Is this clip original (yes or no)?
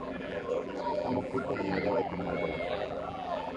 no